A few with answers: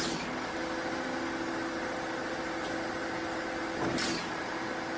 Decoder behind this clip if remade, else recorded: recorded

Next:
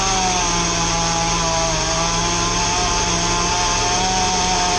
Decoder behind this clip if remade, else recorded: recorded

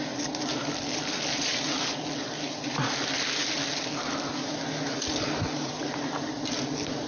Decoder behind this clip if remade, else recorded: recorded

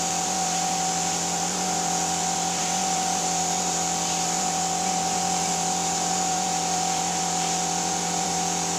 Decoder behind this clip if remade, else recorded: remade, vocoder, BigVGAN v2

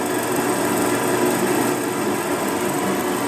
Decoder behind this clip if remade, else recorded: recorded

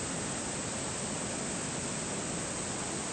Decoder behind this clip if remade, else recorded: recorded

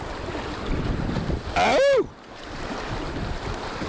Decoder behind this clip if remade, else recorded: recorded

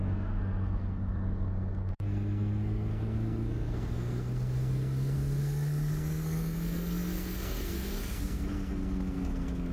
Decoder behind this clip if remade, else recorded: remade, codec, SNAC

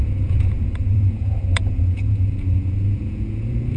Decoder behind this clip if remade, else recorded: remade, vocoder, Vocos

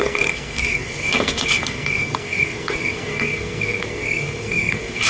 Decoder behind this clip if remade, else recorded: remade, codec, SNAC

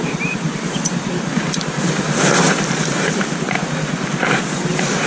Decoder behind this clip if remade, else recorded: remade, vocoder, BigVGAN v2